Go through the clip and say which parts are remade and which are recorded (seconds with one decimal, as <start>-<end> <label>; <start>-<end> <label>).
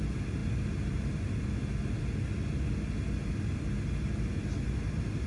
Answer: 0.0-5.3 recorded